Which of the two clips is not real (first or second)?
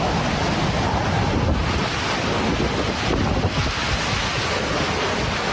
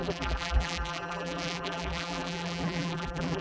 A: second